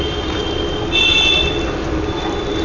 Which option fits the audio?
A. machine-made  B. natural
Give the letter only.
B